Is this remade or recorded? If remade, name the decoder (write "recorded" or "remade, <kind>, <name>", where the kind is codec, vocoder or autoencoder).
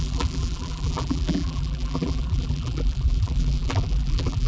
remade, vocoder, BigVGAN v2